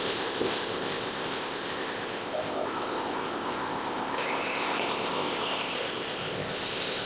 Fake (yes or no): yes